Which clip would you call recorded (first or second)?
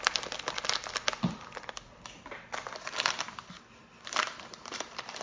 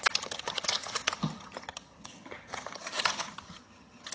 first